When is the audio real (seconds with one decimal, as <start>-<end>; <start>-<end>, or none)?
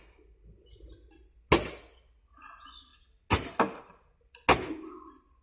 0.0-5.4